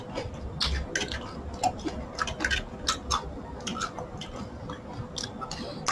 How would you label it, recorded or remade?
recorded